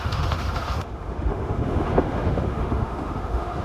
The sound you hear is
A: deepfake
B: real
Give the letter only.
A